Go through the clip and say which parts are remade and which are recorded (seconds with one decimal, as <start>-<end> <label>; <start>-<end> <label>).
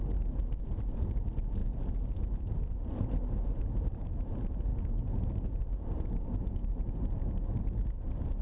0.0-1.6 remade; 1.6-2.4 recorded; 2.4-4.7 remade; 4.7-5.2 recorded; 5.2-8.4 remade